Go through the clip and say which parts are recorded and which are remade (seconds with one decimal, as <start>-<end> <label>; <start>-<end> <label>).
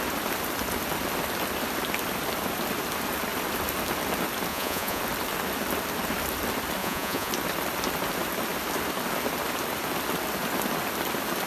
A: 0.0-4.5 recorded; 4.5-5.0 remade; 5.0-6.8 recorded; 6.8-7.3 remade; 7.3-11.5 recorded